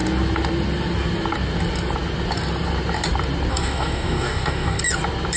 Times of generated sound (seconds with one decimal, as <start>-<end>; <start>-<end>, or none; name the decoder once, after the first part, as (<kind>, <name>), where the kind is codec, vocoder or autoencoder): 3.5-4.8 (codec, DAC)